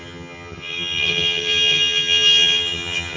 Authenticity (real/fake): fake